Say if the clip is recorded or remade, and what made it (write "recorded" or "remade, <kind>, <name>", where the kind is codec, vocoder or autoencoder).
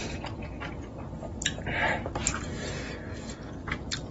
recorded